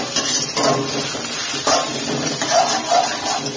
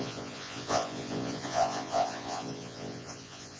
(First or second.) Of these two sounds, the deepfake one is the second